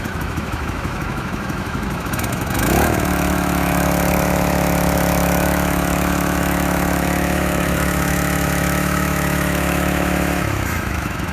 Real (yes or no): no